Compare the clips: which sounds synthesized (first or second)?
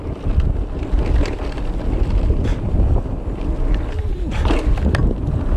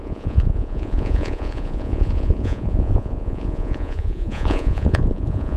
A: second